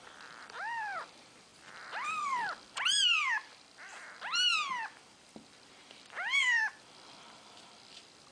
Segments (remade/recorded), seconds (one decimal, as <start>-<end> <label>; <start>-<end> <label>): 0.0-8.3 remade